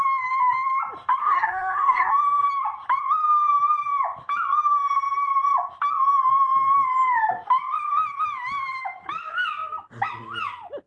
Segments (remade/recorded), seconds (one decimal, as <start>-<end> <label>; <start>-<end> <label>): 0.0-1.2 recorded; 1.2-2.1 remade; 2.1-10.9 recorded